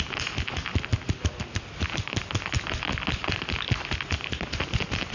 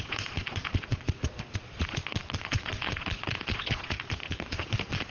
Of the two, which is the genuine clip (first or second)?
first